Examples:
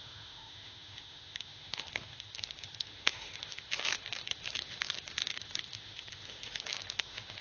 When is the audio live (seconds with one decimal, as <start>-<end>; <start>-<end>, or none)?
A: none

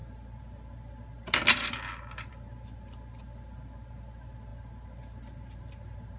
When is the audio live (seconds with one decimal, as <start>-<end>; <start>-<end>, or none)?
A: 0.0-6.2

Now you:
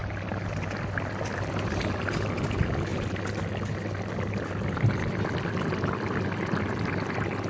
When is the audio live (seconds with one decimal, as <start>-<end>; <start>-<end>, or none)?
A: 0.0-7.5